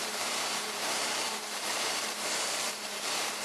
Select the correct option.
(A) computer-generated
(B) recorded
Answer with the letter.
A